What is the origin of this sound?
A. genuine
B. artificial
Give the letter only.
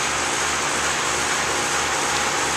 A